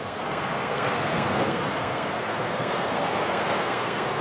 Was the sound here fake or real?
fake